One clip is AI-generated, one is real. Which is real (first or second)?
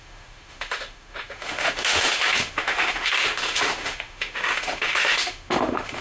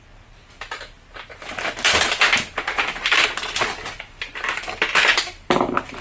second